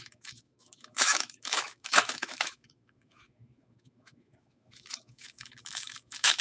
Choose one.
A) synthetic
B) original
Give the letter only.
A